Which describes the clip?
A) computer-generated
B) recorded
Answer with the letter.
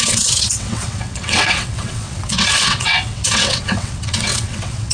A